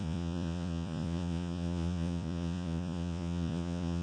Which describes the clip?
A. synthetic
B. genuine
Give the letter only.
A